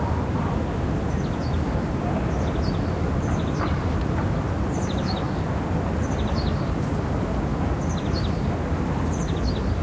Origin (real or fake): real